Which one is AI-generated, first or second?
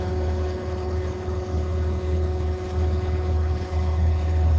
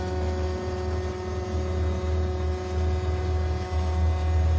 first